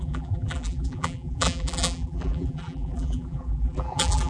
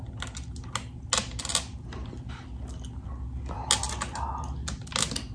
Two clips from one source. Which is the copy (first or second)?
first